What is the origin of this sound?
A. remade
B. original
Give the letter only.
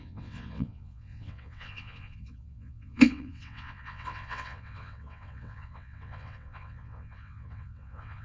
A